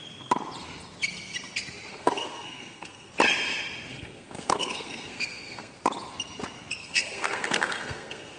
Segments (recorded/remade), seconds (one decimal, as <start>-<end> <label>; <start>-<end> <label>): 0.0-1.9 recorded; 1.9-3.1 remade; 3.1-3.9 recorded; 3.9-5.8 remade; 5.8-6.8 recorded; 6.8-8.4 remade